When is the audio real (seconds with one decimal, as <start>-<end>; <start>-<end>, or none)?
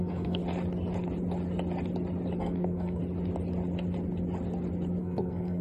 0.4-2.4; 3.0-5.0